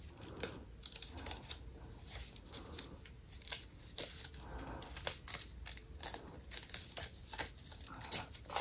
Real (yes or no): yes